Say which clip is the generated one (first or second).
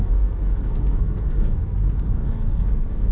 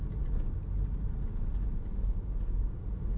first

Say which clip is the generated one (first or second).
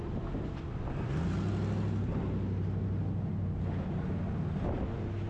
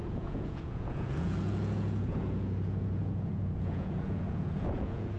second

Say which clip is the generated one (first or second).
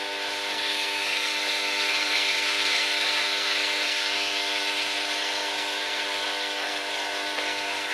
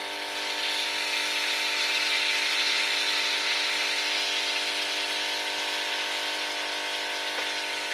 first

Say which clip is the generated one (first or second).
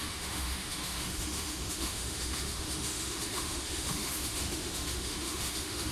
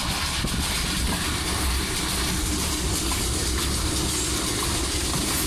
first